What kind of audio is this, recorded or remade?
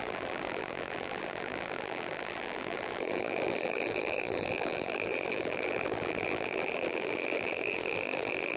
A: remade